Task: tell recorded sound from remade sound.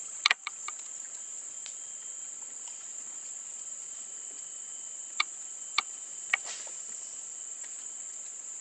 remade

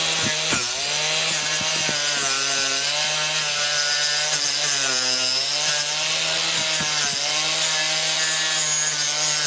recorded